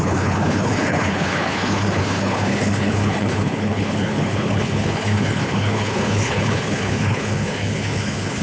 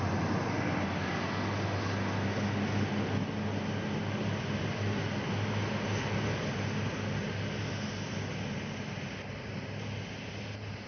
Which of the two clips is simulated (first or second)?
first